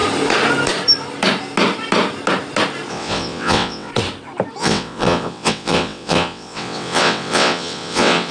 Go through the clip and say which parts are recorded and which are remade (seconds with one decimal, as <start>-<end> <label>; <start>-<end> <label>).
0.0-2.9 recorded; 2.9-3.9 remade; 3.9-4.6 recorded; 4.6-8.3 remade

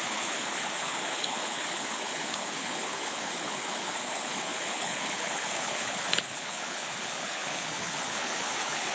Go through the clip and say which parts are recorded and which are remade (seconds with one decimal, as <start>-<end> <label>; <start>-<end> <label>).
0.0-8.9 remade

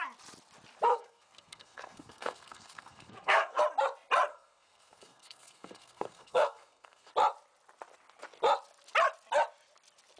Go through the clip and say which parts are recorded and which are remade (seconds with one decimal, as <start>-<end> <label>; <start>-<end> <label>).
0.0-0.9 recorded; 0.9-3.6 remade; 3.6-4.3 recorded; 4.3-7.1 remade; 7.1-10.2 recorded

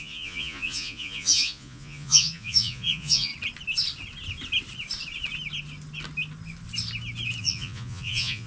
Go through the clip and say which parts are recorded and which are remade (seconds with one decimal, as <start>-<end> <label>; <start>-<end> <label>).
0.0-3.3 remade; 3.3-7.4 recorded; 7.4-8.5 remade

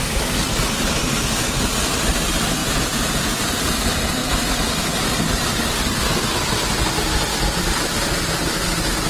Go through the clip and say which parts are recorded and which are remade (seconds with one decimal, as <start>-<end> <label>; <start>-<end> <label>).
0.0-2.6 recorded; 2.6-3.4 remade; 3.4-9.1 recorded

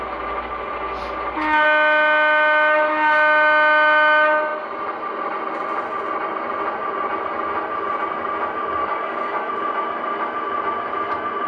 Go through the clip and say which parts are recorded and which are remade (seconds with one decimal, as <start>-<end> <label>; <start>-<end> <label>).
0.0-8.8 recorded; 8.8-9.5 remade; 9.5-11.5 recorded

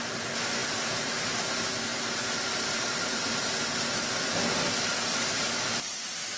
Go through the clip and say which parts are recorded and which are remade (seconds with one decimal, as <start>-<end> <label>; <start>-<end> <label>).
0.0-6.4 recorded